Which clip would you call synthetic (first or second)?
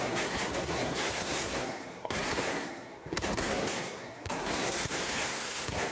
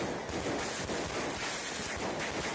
first